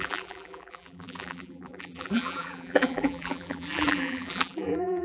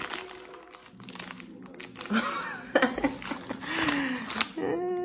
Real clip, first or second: second